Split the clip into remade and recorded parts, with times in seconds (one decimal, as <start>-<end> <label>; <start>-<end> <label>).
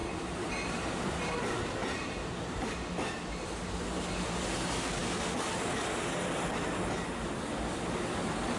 0.0-2.7 remade; 2.7-8.6 recorded